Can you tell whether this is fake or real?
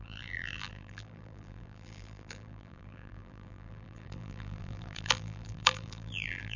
fake